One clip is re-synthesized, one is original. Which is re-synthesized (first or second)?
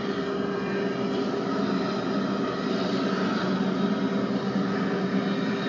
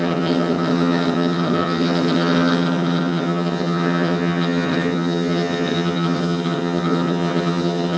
second